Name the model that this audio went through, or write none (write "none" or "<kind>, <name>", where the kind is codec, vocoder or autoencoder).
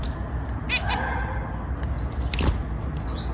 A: none